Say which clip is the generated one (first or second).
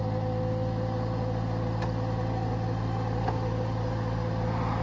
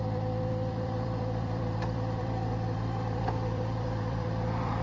second